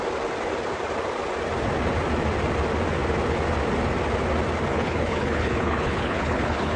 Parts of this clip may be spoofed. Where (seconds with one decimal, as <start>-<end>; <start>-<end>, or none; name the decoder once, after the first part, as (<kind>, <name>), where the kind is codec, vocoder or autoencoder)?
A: 4.7-6.8 (codec, HILCodec)